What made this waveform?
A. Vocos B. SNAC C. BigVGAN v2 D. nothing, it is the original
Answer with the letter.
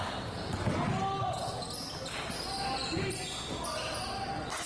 D